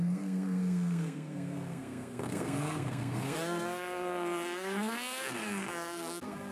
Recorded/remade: remade